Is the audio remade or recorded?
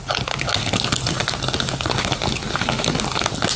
recorded